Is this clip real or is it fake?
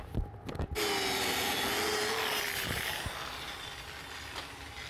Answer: real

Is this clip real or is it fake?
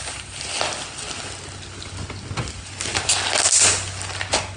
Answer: real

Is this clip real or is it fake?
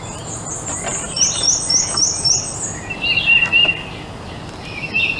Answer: real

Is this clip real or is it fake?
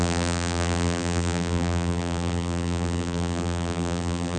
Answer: fake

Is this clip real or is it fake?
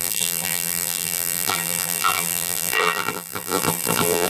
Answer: fake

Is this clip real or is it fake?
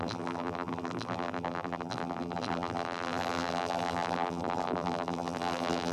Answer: fake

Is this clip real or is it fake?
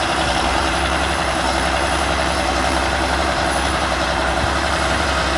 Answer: fake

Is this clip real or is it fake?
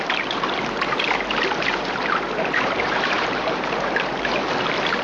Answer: fake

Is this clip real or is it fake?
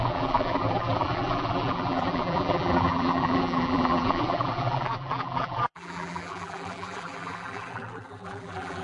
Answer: fake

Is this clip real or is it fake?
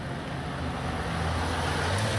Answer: real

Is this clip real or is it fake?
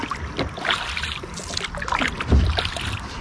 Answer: real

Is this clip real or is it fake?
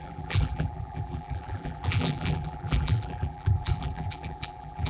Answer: fake